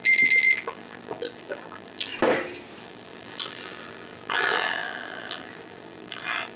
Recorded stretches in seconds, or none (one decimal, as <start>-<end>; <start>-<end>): 2.1-2.8